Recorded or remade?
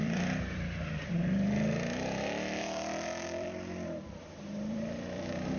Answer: remade